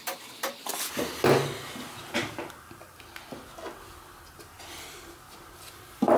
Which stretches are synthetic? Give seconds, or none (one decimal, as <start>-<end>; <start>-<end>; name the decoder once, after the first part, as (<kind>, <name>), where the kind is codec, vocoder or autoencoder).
none